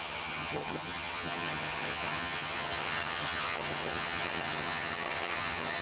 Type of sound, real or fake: fake